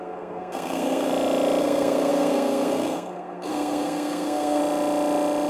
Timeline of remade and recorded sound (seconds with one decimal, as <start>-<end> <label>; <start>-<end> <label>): 0.0-1.1 remade; 1.1-1.6 recorded; 1.6-4.6 remade; 4.6-5.5 recorded